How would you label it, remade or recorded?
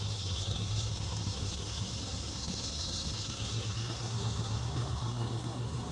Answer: remade